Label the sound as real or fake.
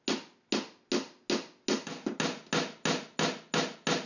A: real